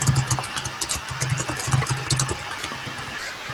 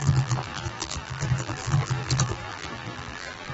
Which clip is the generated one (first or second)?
second